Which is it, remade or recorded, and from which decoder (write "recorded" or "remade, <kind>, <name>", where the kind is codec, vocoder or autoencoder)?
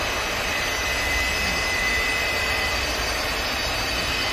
remade, vocoder, BigVGAN v2